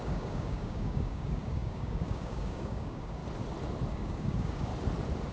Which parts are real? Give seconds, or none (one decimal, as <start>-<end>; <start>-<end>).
3.2-3.9; 4.7-5.3